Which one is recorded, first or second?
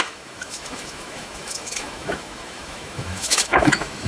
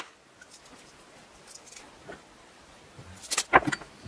second